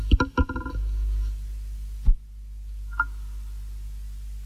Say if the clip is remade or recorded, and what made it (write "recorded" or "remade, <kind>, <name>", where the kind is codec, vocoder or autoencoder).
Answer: recorded